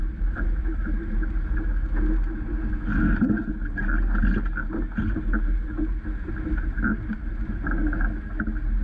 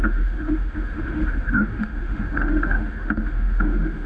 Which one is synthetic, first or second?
second